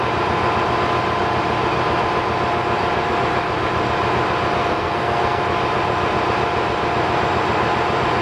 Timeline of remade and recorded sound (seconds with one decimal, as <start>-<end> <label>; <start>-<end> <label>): 0.0-4.6 recorded; 4.6-5.4 remade; 5.4-8.2 recorded